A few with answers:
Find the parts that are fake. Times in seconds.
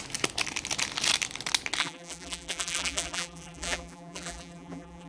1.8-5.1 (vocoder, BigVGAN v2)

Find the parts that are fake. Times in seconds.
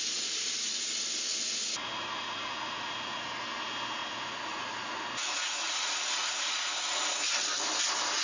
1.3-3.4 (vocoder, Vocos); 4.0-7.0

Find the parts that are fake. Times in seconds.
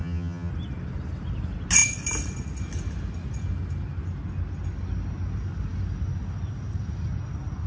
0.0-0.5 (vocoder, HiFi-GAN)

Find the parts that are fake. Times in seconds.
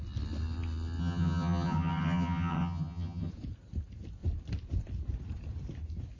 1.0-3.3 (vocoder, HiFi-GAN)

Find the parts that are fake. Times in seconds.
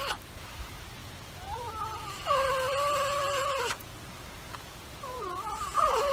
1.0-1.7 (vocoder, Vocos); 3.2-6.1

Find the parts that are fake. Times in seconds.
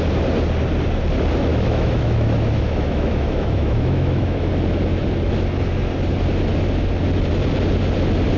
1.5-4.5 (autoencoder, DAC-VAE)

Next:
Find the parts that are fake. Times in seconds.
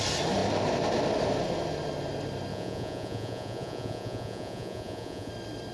2.5-5.3 (vocoder, Vocos)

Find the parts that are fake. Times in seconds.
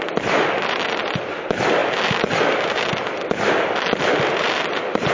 none